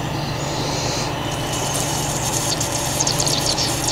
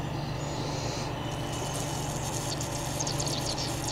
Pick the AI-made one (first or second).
first